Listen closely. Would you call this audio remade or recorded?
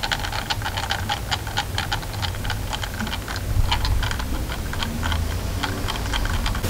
recorded